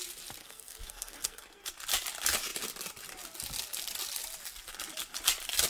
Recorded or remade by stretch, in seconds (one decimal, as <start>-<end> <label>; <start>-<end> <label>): 0.0-0.4 recorded; 0.4-1.7 remade; 1.7-5.7 recorded